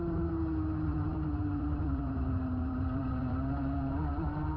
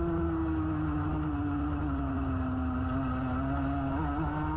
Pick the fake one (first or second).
first